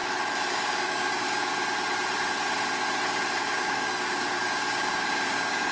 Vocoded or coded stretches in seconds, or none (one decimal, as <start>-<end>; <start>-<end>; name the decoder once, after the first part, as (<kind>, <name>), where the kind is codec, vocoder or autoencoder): 0.5-1.5 (codec, DAC); 3.4-5.7